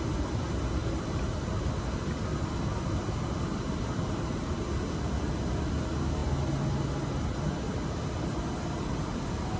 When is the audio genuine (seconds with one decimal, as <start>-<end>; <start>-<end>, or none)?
0.0-9.6